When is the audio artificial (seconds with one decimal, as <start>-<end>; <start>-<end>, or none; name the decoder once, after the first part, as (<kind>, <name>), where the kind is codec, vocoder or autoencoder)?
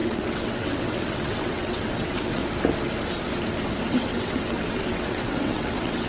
0.0-2.4 (vocoder, WaveNeXt); 3.9-6.1